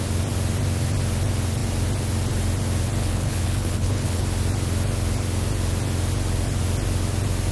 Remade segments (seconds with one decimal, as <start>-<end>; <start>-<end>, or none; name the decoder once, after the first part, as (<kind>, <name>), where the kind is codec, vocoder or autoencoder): 3.0-4.2 (codec, HILCodec)